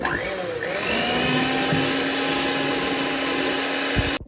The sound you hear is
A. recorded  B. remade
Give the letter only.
A